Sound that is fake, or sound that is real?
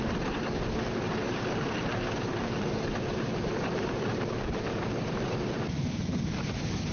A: fake